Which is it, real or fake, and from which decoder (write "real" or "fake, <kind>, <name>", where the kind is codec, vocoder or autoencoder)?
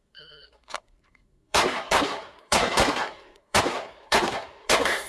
fake, codec, SNAC